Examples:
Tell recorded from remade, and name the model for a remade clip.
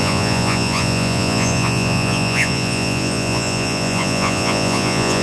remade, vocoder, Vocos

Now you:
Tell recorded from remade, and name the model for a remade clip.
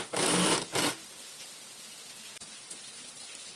recorded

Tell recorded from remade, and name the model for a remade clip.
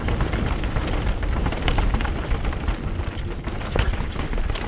recorded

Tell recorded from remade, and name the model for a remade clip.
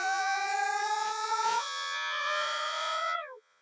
remade, vocoder, Vocos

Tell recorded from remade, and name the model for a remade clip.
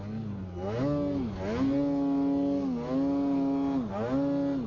recorded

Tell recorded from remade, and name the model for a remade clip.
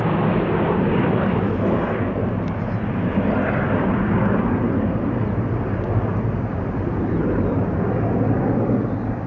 recorded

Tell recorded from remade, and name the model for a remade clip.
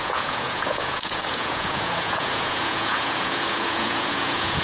remade, vocoder, Vocos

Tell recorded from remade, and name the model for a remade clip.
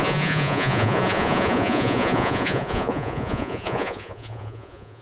remade, vocoder, Vocos